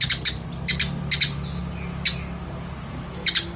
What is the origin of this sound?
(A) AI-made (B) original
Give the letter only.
B